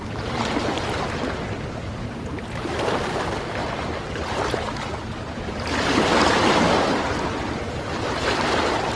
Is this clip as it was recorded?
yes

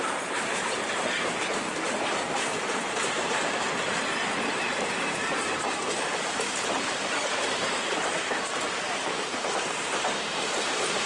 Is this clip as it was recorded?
no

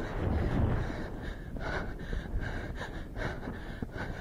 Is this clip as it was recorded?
yes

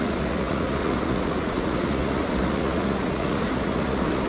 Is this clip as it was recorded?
no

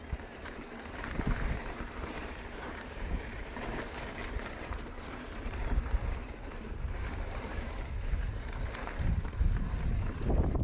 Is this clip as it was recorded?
no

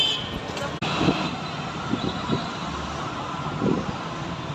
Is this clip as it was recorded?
yes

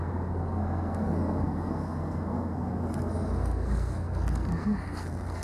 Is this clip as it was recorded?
no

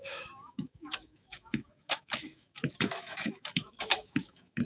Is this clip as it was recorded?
no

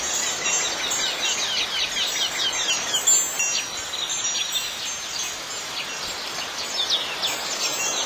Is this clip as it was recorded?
yes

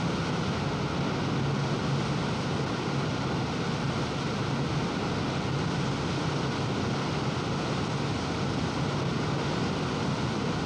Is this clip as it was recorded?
yes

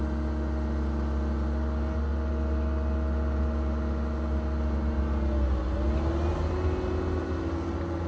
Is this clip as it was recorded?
yes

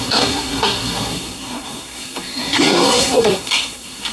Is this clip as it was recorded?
no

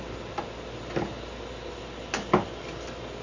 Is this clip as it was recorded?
yes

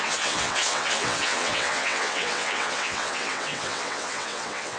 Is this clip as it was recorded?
no